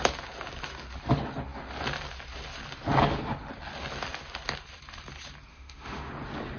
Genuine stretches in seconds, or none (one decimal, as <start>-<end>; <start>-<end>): 0.0-5.5; 6.1-6.6